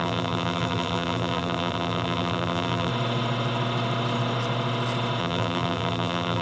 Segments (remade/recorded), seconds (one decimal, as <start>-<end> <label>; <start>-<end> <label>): 0.0-2.9 remade; 2.9-5.2 recorded; 5.2-6.4 remade